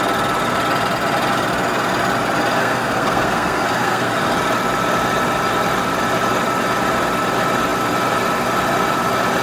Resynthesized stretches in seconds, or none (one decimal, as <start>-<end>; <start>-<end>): 2.6-4.1